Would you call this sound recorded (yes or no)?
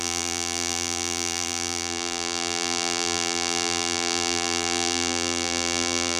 no